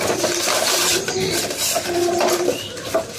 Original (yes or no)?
no